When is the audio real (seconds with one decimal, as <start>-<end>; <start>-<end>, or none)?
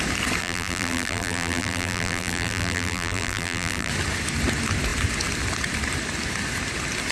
0.0-0.4; 3.9-7.1